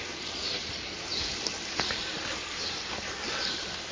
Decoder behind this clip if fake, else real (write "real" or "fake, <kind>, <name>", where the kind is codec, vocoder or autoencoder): fake, vocoder, BigVGAN v2